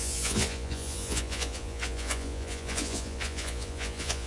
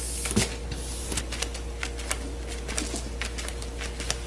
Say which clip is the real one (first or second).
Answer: second